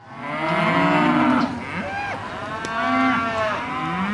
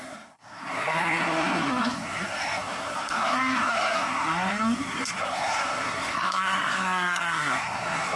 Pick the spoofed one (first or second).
second